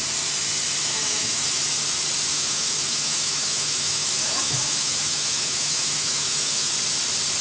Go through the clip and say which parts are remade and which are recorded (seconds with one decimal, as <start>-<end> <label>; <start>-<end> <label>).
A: 0.0-0.8 recorded; 0.8-1.6 remade; 1.6-2.3 recorded; 2.3-6.7 remade; 6.7-7.4 recorded